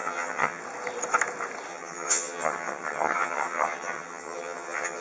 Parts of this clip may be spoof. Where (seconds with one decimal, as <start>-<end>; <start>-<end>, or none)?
0.0-0.6; 1.7-5.0